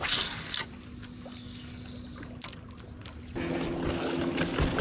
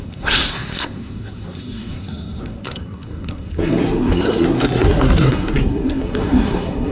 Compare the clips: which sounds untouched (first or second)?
first